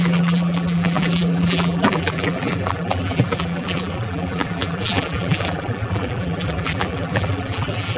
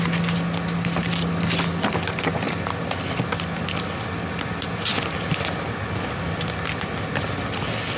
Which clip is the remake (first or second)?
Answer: first